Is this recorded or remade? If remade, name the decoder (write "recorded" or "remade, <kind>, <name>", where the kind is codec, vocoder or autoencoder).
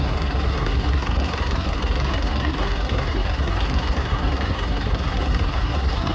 remade, codec, SNAC